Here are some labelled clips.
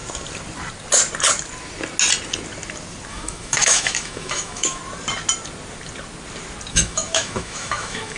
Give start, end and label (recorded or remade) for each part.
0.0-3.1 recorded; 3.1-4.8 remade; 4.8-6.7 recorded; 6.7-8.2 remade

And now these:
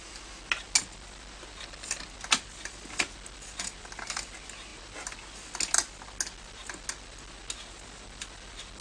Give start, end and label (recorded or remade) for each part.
0.0-8.8 recorded